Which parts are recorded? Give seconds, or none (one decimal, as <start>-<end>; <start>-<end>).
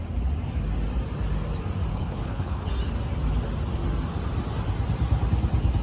0.0-1.9; 2.7-5.8